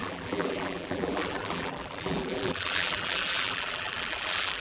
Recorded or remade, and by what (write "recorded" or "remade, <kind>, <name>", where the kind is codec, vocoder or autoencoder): remade, vocoder, BigVGAN v2